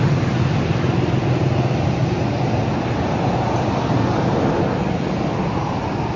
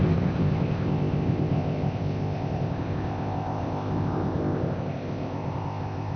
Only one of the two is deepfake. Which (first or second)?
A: second